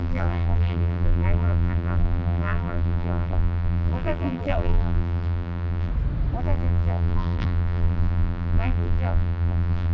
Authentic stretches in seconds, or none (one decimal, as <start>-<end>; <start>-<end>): 5.9-6.4